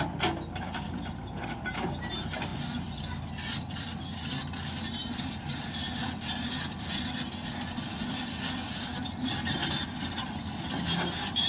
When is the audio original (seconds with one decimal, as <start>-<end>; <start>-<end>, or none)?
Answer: 0.0-11.5